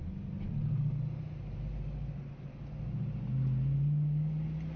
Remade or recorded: recorded